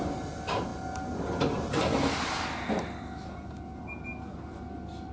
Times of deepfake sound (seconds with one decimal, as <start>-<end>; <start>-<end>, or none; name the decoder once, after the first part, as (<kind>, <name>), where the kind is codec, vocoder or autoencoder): none